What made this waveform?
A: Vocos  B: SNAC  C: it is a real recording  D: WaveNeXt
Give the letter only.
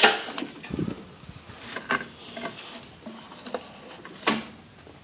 C